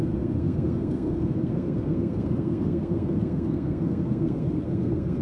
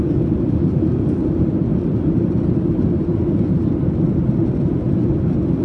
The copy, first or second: first